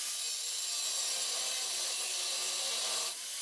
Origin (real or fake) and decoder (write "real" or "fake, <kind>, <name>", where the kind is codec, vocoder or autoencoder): real